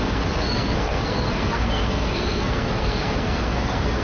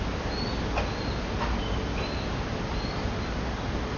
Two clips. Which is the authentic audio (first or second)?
second